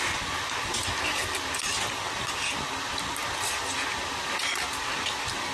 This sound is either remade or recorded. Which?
recorded